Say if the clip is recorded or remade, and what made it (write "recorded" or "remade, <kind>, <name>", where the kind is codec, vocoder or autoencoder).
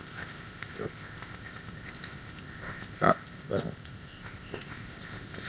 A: remade, codec, ZipCodec